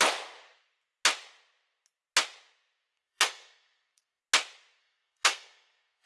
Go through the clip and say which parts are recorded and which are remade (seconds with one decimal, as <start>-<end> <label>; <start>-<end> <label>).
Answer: 0.0-2.9 recorded; 2.9-4.2 remade; 4.2-4.8 recorded; 4.8-6.1 remade